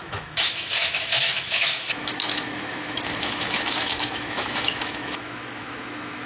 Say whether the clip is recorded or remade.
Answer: remade